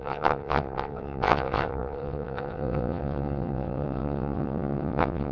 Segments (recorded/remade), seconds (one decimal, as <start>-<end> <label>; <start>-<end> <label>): 0.0-5.3 remade